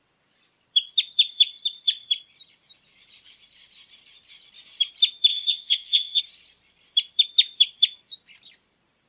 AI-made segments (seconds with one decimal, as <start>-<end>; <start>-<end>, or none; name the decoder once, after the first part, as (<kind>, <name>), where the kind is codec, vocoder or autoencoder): 5.3-6.2 (vocoder, WaveNeXt)